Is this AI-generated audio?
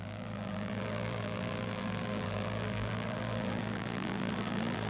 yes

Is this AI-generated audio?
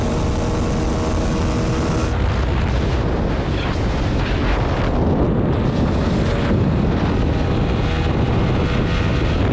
no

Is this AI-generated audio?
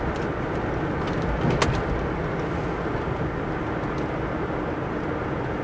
no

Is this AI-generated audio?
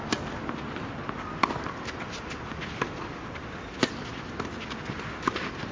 no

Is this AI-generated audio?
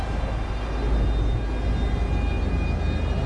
no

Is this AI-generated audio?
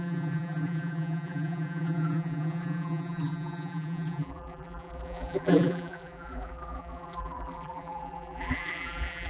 yes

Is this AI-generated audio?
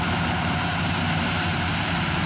yes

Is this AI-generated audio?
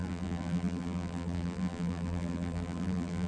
yes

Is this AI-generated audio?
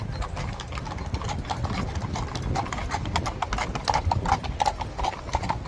yes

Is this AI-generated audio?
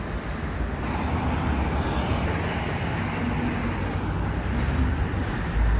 yes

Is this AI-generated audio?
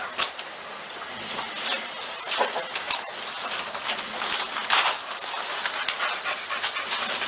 no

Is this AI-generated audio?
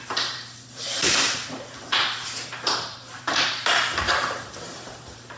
yes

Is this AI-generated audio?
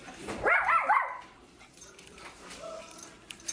yes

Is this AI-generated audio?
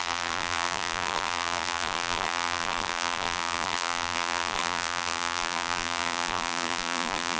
yes